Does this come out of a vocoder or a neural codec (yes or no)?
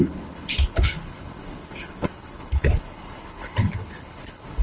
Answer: yes